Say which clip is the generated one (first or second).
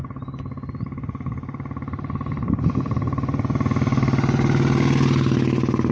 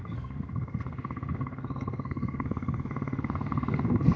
second